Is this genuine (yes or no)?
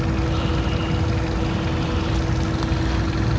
yes